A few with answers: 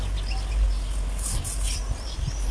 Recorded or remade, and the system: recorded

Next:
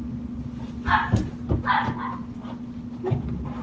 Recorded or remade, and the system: recorded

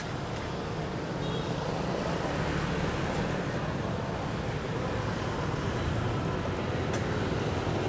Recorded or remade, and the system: recorded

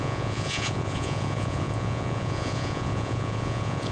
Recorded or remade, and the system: remade, vocoder, Vocos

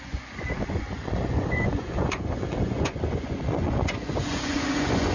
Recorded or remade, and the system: remade, vocoder, Vocos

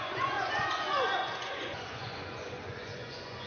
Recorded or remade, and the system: remade, vocoder, Vocos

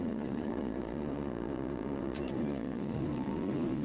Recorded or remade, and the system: remade, vocoder, Vocos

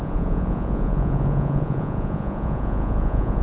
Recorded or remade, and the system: remade, vocoder, Vocos